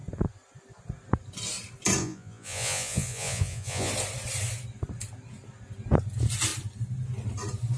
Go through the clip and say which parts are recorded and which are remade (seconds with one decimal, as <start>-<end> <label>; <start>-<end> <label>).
0.0-2.0 recorded; 2.0-3.9 remade; 3.9-7.8 recorded